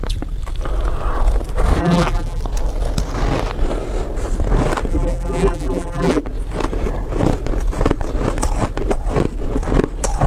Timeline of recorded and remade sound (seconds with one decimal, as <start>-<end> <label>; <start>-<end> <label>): 0.0-1.8 recorded; 1.8-2.4 remade; 2.4-4.9 recorded; 4.9-6.2 remade; 6.2-10.3 recorded